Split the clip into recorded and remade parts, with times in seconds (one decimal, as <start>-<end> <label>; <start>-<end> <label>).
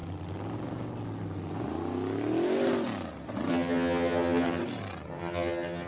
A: 0.0-3.5 recorded; 3.5-4.6 remade; 4.6-5.1 recorded; 5.1-5.9 remade